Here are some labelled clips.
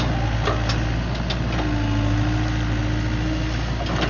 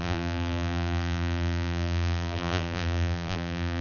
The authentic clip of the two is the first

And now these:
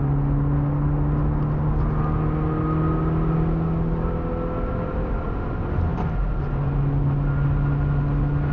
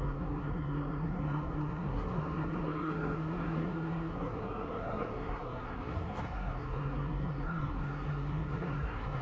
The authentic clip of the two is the first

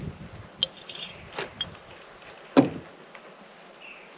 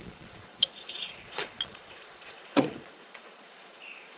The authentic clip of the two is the first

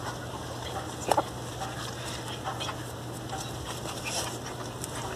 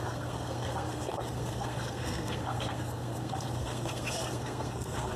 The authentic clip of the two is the first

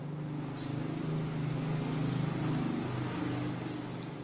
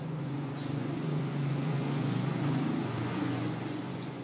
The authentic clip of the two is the first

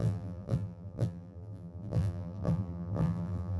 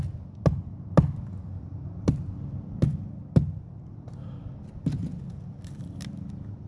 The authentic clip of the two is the second